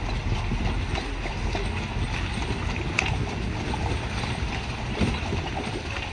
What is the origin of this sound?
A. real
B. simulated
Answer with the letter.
A